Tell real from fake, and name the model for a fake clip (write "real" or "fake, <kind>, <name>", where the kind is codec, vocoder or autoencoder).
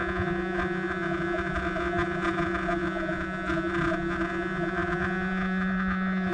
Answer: fake, vocoder, Vocos